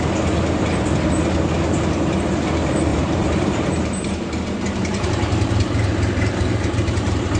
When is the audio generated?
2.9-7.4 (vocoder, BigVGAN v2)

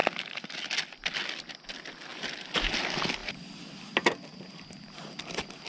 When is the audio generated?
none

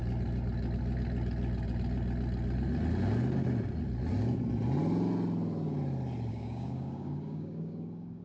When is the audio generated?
6.3-8.2 (codec, DAC)

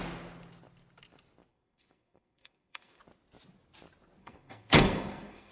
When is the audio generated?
1.5-3.0 (codec, SNAC); 4.2-5.5